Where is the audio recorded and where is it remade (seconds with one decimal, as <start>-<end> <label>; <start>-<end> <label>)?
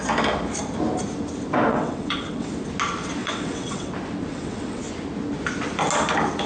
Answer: 0.0-1.7 recorded; 1.7-2.5 remade; 2.5-3.2 recorded; 3.2-3.9 remade; 3.9-4.3 recorded; 4.3-4.8 remade; 4.8-6.5 recorded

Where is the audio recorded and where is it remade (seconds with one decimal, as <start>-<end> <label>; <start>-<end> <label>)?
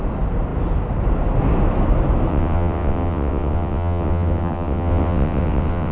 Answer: 0.0-2.3 recorded; 2.3-5.9 remade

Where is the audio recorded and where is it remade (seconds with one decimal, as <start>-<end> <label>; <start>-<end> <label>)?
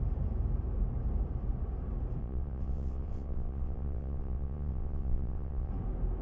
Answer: 0.0-2.2 recorded; 2.2-5.7 remade; 5.7-6.2 recorded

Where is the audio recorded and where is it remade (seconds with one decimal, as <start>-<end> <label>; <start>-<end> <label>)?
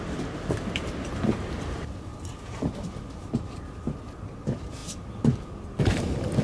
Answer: 0.0-6.4 recorded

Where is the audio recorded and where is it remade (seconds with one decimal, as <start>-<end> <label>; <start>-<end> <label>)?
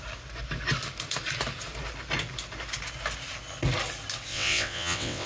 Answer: 0.0-4.3 recorded; 4.3-5.3 remade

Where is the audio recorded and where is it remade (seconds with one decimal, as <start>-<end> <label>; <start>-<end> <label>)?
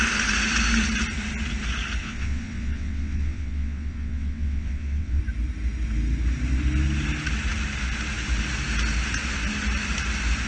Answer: 0.0-2.0 recorded; 2.0-5.2 remade; 5.2-10.5 recorded